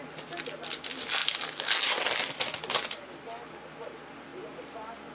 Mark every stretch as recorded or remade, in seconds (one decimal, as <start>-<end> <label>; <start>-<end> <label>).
0.0-5.1 recorded

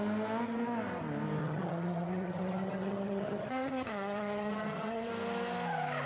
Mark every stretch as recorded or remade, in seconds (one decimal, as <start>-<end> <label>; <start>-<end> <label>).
0.0-1.4 recorded; 1.4-5.1 remade; 5.1-6.1 recorded